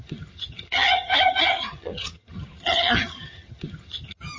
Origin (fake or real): fake